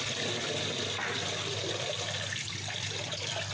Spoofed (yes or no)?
no